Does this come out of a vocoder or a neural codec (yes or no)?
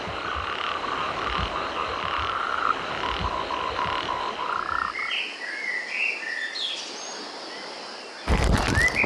no